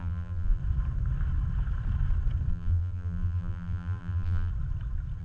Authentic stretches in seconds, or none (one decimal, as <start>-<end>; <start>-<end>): 0.6-2.5; 4.5-5.2